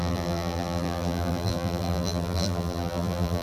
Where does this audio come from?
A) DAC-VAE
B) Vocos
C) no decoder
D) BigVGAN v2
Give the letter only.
D